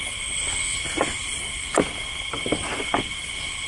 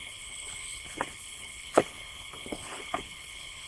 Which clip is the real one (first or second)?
first